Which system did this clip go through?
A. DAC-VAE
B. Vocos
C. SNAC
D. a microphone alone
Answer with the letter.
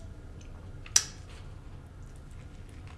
D